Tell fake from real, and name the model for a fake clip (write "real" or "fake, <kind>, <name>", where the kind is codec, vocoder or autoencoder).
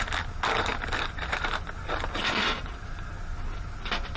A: real